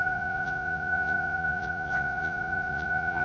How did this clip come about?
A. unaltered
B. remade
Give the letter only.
B